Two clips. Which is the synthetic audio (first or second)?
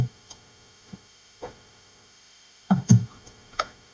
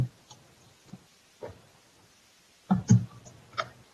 first